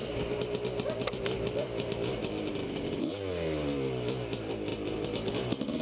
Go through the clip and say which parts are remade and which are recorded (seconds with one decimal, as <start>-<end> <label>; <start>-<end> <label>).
0.0-5.8 recorded

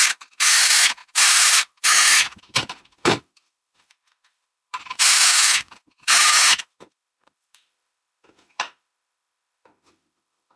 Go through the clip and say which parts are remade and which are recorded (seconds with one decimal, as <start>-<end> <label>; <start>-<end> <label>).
0.0-10.6 remade

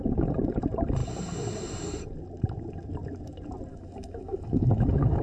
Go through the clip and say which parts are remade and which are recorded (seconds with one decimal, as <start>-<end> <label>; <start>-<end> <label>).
0.0-3.7 recorded; 3.7-5.2 remade

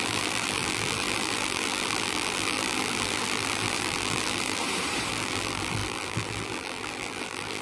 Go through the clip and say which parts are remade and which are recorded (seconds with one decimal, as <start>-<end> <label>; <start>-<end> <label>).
0.0-4.6 remade; 4.6-5.1 recorded; 5.1-7.6 remade